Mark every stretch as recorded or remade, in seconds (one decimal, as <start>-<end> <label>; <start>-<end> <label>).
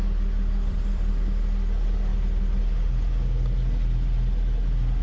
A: 0.0-1.1 remade; 1.1-5.0 recorded